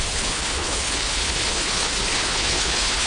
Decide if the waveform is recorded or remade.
remade